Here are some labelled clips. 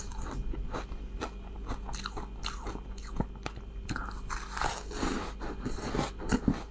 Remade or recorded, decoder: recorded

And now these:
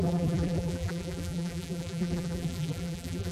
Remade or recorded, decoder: remade, vocoder, BigVGAN v2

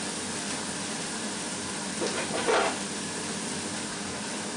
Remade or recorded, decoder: remade, vocoder, BigVGAN v2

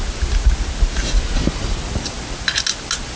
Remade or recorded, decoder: recorded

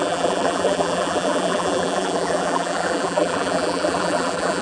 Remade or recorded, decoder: remade, vocoder, BigVGAN v2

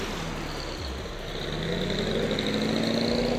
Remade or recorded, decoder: recorded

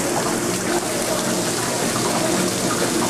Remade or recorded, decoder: recorded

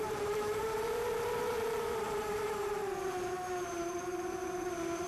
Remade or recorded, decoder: remade, vocoder, BigVGAN v2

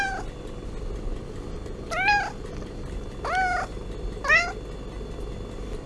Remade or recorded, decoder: recorded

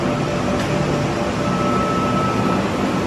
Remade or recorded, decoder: recorded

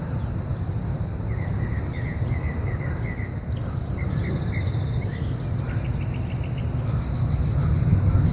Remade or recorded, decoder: recorded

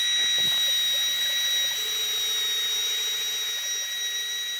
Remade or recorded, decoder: recorded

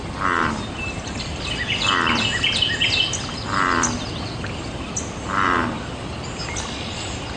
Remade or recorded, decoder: recorded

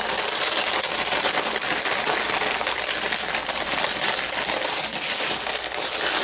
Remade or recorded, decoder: recorded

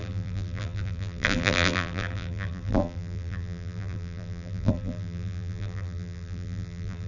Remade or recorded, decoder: remade, vocoder, BigVGAN v2